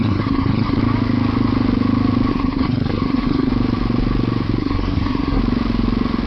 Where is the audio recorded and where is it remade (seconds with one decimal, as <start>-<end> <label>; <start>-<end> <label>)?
0.0-0.8 remade; 0.8-2.3 recorded; 2.3-3.5 remade; 3.5-4.6 recorded; 4.6-5.4 remade; 5.4-6.3 recorded